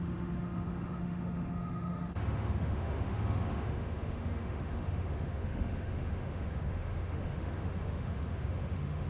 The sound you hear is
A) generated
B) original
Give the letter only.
A